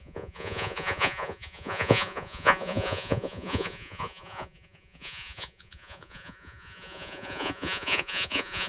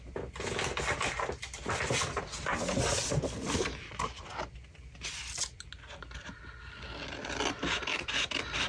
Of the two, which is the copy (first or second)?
first